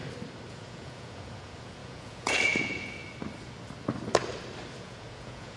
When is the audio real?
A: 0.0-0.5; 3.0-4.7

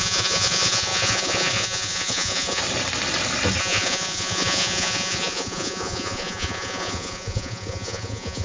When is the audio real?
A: 2.6-3.6